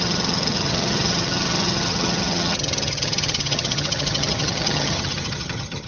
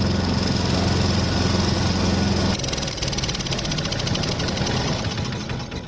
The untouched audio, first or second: second